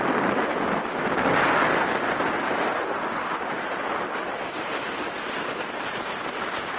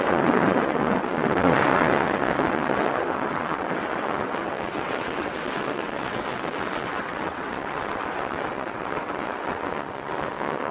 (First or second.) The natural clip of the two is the first